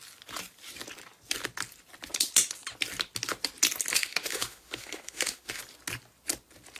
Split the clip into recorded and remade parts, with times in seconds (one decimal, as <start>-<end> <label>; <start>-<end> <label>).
0.0-3.9 recorded; 3.9-5.6 remade; 5.6-6.8 recorded